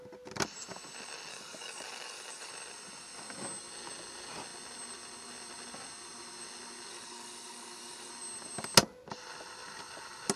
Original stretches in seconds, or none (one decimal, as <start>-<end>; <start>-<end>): 0.0-1.3; 2.5-6.9; 8.1-10.4

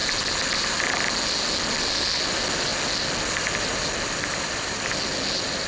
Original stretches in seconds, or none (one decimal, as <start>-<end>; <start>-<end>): 0.0-5.7

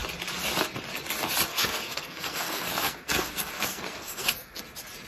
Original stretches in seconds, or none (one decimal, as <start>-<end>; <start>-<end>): 0.0-1.5; 4.6-5.1

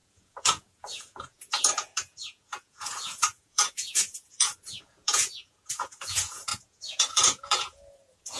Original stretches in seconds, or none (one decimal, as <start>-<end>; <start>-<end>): none

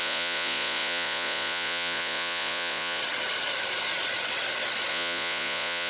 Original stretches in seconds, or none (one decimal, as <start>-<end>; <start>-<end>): 3.0-4.9

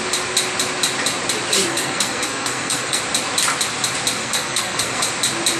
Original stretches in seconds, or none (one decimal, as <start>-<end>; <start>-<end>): 0.0-1.7; 3.0-4.2; 5.1-5.6

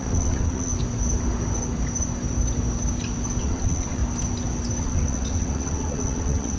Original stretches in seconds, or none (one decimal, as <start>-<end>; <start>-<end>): 0.7-3.4; 4.0-4.8